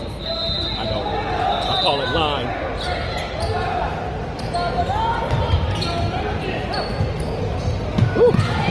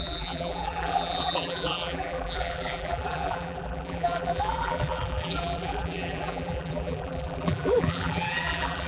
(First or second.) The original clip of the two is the first